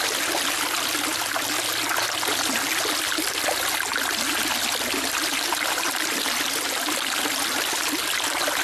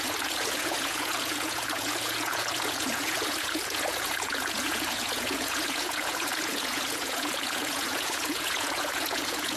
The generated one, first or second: second